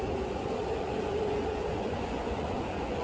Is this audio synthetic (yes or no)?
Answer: yes